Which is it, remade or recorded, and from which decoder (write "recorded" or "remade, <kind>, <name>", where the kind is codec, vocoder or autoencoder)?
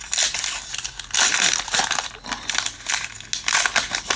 recorded